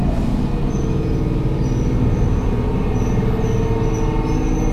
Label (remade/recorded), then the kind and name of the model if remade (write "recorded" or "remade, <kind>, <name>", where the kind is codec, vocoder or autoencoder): recorded